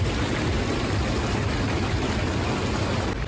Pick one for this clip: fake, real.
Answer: real